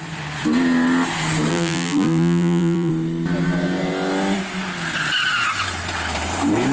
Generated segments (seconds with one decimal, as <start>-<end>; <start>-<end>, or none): 1.5-2.9